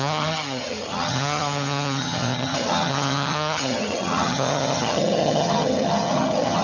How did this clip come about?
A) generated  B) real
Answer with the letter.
A